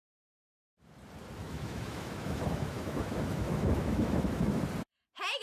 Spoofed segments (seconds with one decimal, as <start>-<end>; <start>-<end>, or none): 1.4-4.6